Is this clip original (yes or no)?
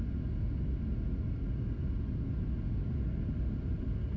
yes